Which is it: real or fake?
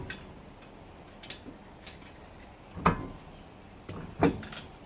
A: real